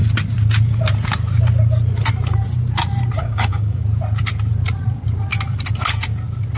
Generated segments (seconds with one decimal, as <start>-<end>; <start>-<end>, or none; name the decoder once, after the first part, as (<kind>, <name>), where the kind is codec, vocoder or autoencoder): 3.2-3.8 (codec, DAC)